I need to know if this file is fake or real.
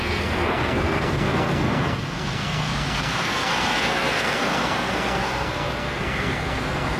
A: fake